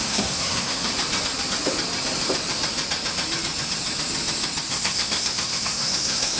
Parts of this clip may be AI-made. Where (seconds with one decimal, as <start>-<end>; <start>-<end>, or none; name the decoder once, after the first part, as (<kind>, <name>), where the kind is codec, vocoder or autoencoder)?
0.0-0.9 (codec, SNAC); 4.7-6.4